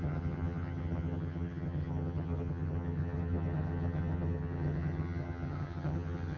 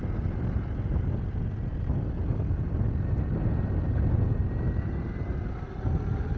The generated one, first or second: first